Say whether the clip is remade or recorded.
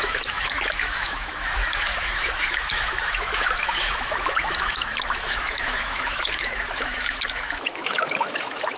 remade